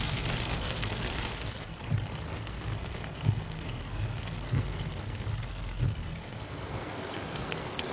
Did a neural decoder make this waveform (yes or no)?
yes